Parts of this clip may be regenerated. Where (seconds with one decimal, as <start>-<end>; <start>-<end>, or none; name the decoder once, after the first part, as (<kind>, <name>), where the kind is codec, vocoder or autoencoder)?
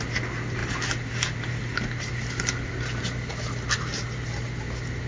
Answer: none